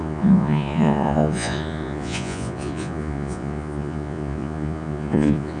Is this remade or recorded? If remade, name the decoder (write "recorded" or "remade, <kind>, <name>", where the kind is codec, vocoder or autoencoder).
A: remade, vocoder, Vocos